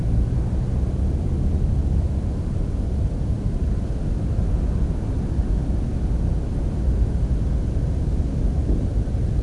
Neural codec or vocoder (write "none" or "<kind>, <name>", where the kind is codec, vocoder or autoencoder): none